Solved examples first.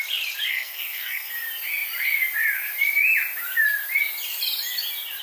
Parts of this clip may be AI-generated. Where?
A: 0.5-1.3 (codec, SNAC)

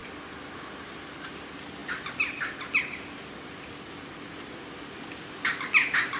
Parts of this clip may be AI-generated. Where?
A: none